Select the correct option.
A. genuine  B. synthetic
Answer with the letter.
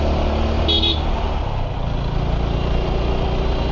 A